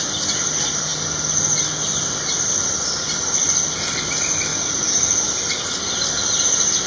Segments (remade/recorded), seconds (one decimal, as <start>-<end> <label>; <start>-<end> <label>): 0.0-6.9 recorded